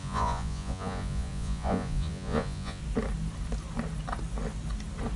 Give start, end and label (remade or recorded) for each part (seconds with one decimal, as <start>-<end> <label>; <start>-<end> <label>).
0.0-2.8 remade; 2.8-5.2 recorded